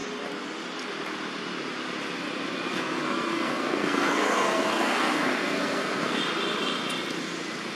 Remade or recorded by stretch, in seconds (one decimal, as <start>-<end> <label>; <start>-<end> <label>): 0.0-2.7 recorded; 2.7-6.2 remade; 6.2-7.8 recorded